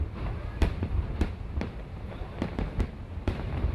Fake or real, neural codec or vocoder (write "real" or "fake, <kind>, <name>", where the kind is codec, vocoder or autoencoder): fake, vocoder, BigVGAN v2